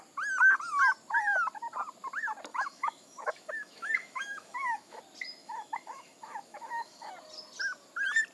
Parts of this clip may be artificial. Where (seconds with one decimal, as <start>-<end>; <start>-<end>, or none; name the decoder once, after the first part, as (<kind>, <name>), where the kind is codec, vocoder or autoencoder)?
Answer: 2.5-5.0 (autoencoder, DAC-VAE); 5.4-7.1